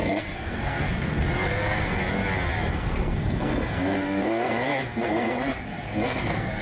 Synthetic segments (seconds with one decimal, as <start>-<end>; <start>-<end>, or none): 0.0-2.0; 2.7-6.6